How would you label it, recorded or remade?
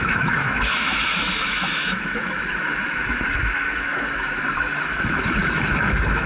remade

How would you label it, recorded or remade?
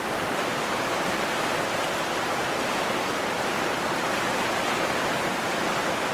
remade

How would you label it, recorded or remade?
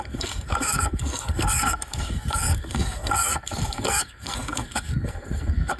remade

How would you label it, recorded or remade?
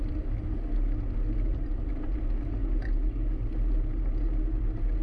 recorded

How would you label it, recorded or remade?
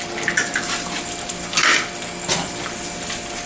recorded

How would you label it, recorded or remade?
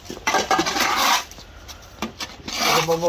remade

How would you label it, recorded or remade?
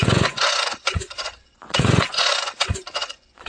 remade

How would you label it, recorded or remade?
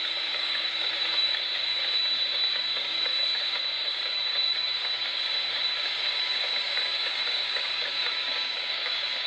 remade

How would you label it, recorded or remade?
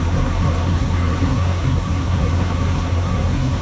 remade